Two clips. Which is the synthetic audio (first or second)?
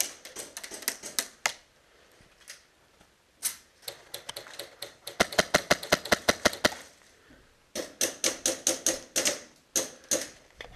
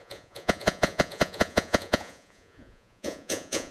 second